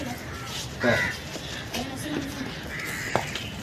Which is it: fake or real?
fake